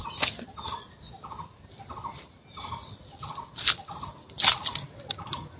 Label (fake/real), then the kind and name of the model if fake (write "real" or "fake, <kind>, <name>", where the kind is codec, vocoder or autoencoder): real